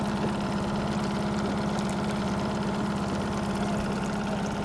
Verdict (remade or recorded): recorded